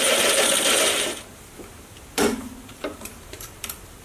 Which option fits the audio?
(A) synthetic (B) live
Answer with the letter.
A